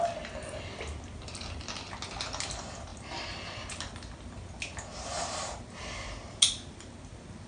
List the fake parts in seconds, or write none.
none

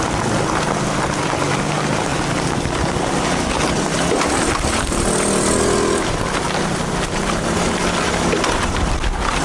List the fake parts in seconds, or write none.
none

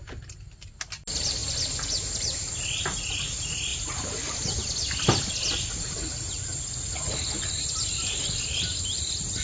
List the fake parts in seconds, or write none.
none

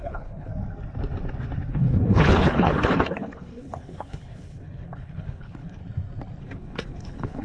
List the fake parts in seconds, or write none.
0.0-0.5 (codec, HILCodec); 1.7-5.8; 6.4-7.4

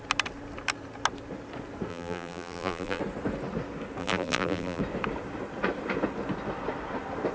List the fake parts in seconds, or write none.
1.9-3.0 (vocoder, BigVGAN v2); 4.0-4.8

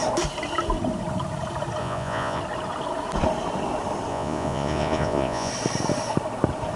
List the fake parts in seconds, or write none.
1.8-2.4 (vocoder, Vocos); 4.1-5.5